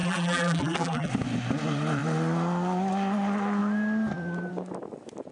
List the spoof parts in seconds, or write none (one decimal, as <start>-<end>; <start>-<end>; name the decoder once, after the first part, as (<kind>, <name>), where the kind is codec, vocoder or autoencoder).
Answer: 0.0-1.1 (vocoder, BigVGAN v2)